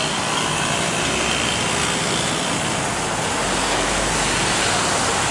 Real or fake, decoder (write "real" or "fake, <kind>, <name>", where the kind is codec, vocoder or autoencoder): real